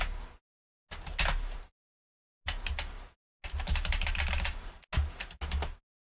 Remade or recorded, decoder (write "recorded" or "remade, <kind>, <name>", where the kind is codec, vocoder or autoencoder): recorded